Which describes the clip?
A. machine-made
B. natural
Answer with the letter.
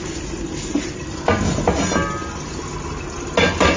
B